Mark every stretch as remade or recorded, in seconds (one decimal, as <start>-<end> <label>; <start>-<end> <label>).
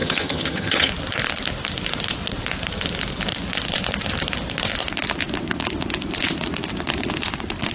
0.0-0.9 remade; 0.9-7.7 recorded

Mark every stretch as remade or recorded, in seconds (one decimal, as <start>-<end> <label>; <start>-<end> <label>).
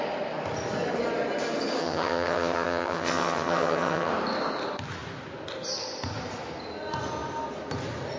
0.0-1.8 recorded; 1.8-4.1 remade; 4.1-8.2 recorded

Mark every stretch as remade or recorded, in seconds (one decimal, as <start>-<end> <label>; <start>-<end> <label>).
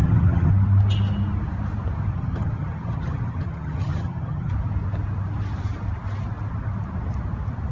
0.0-0.5 remade; 0.5-2.1 recorded; 2.1-4.5 remade; 4.5-7.7 recorded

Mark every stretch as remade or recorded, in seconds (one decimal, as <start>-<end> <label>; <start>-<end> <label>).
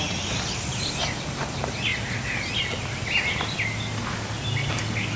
0.0-5.2 recorded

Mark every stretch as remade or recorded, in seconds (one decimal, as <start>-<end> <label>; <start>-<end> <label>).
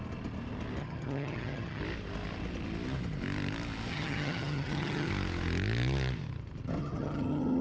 0.0-0.8 recorded; 0.8-1.8 remade; 1.8-3.9 recorded; 3.9-5.1 remade; 5.1-6.8 recorded; 6.8-7.6 remade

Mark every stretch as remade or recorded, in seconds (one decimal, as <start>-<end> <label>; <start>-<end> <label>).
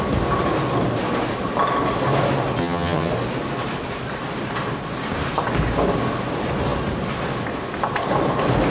0.0-2.6 recorded; 2.6-3.1 remade; 3.1-8.7 recorded